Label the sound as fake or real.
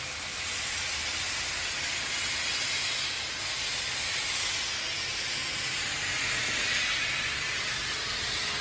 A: real